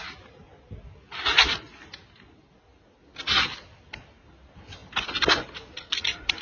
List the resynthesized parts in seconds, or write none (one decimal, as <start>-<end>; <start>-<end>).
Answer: none

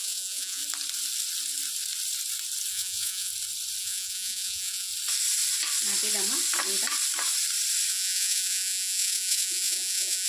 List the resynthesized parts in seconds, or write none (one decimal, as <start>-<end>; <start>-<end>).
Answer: 0.0-0.6; 2.7-3.3; 3.8-4.9; 7.9-10.3

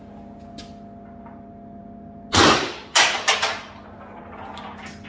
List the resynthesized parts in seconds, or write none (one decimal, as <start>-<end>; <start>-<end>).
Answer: none